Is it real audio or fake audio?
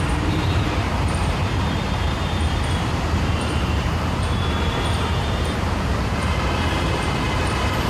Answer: fake